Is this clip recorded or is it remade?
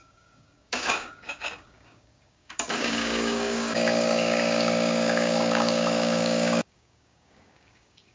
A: remade